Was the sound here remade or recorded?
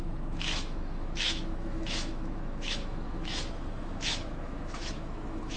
remade